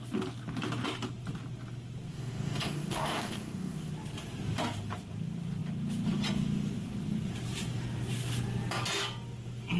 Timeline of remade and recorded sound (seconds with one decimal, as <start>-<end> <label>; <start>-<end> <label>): 0.0-2.1 recorded; 2.1-3.9 remade; 3.9-9.8 recorded